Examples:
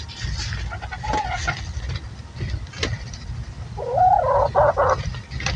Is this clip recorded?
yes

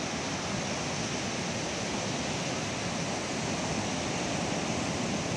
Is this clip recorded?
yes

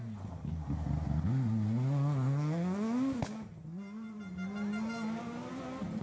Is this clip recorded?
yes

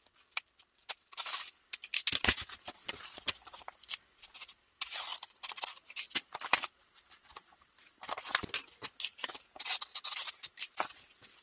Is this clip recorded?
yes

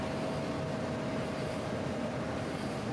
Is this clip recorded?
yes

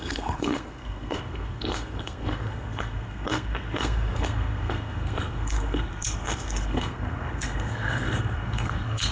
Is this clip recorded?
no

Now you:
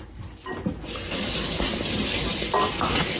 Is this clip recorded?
yes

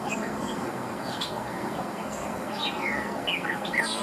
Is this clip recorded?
no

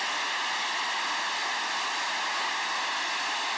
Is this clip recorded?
yes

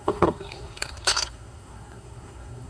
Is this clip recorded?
no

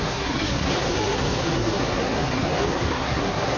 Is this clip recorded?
no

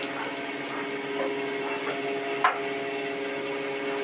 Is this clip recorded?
yes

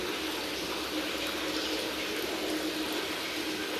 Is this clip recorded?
yes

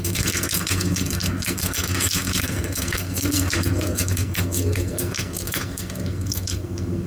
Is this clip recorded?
no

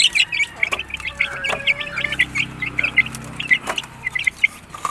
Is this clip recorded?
yes